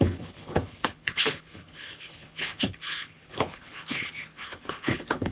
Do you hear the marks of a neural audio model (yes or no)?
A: yes